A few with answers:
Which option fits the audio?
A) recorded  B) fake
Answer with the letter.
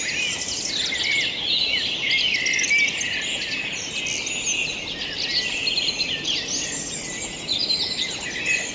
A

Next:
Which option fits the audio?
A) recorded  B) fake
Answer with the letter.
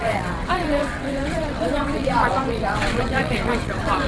B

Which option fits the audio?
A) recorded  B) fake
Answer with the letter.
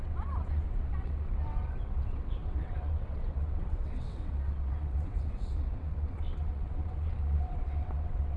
B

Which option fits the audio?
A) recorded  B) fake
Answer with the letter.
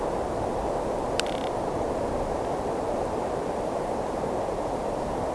A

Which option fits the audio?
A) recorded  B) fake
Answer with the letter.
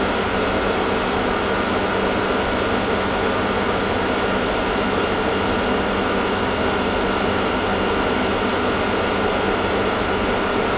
A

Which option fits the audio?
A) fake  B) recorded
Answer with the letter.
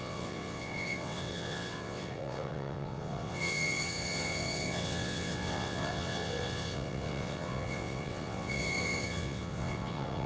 A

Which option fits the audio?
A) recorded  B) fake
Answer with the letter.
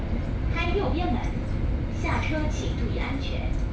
A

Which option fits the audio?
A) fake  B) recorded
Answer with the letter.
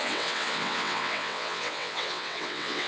A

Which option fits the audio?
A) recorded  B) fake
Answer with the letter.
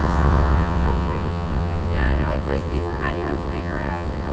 B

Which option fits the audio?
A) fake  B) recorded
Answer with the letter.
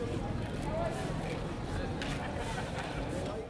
B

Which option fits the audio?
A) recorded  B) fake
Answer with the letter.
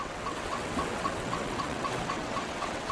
B